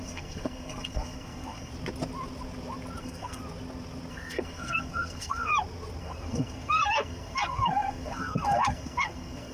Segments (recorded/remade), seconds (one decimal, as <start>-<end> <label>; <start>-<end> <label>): 0.0-1.7 remade; 1.7-3.0 recorded; 3.0-3.4 remade; 3.4-4.1 recorded; 4.1-5.5 remade; 5.5-6.0 recorded; 6.0-9.5 remade